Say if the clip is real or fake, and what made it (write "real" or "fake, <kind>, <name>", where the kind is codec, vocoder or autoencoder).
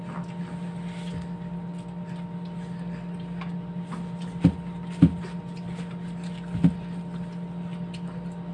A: real